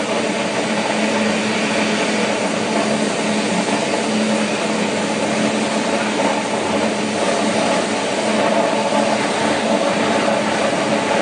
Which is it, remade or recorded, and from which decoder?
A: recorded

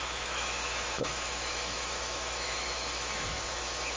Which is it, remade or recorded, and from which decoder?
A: remade, autoencoder, DAC-VAE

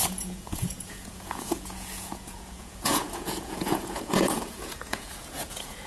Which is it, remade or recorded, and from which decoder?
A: remade, vocoder, Vocos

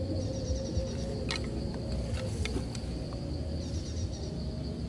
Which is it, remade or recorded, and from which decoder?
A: recorded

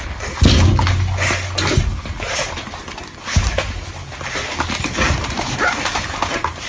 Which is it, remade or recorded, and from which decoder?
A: recorded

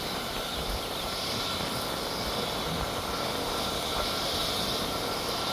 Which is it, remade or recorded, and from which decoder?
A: remade, vocoder, BigVGAN v2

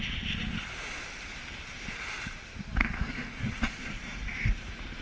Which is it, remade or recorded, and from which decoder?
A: recorded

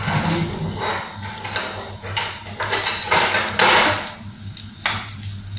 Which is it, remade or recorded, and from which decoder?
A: recorded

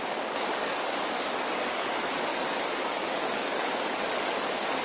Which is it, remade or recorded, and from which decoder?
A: remade, codec, DAC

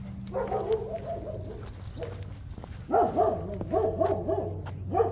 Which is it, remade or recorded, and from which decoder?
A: recorded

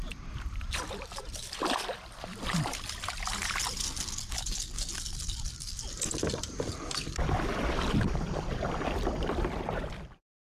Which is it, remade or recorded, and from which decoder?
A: remade, vocoder, BigVGAN v2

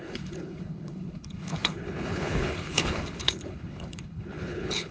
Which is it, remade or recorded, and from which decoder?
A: remade, codec, HILCodec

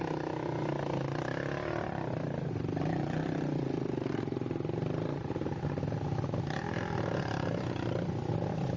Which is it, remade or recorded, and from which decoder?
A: recorded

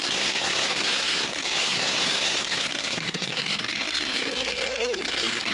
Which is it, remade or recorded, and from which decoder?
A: remade, codec, SNAC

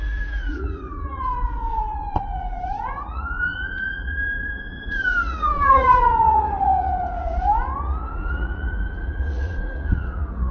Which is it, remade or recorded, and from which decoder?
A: remade, vocoder, Vocos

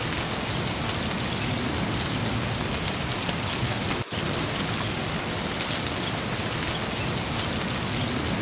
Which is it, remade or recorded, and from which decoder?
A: recorded